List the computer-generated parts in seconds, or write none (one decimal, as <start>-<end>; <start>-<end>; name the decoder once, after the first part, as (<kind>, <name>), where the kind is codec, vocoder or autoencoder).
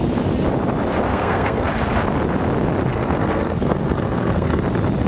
1.1-1.7 (codec, SNAC); 2.9-4.6